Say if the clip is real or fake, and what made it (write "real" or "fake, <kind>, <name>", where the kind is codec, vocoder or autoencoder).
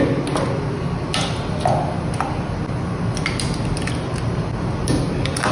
real